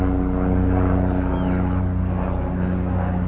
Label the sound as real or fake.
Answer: real